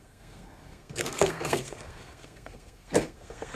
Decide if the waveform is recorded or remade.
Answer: remade